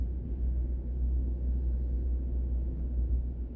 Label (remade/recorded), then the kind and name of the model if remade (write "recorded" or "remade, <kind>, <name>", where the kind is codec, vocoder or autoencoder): recorded